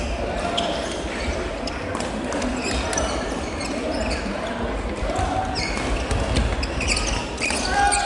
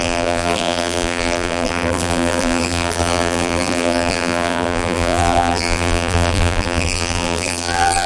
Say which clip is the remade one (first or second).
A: second